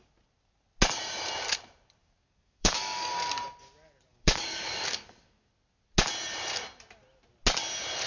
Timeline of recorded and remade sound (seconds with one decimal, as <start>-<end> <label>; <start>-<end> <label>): 0.0-2.0 recorded; 2.0-3.1 remade; 3.1-4.1 recorded; 4.1-5.5 remade; 5.5-8.1 recorded